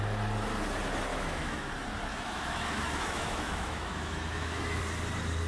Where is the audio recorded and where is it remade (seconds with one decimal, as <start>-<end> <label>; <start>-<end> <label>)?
0.0-1.1 recorded; 1.1-1.7 remade; 1.7-2.1 recorded; 2.1-4.8 remade; 4.8-5.5 recorded